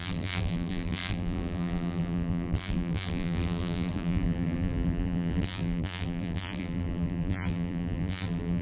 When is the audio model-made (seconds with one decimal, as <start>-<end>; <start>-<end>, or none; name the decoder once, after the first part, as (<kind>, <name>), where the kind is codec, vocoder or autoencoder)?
0.0-8.6 (vocoder, BigVGAN v2)